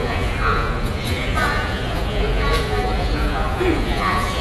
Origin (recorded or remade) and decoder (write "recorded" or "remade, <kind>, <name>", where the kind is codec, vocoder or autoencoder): remade, vocoder, Vocos